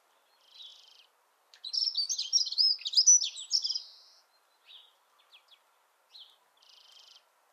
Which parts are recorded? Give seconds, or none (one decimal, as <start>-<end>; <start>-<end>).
0.0-7.5